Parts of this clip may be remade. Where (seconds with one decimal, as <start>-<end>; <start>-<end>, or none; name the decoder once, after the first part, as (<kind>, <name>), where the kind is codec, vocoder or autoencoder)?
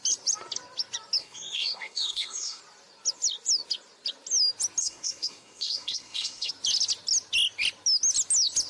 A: 1.2-2.6 (codec, SNAC); 4.8-6.5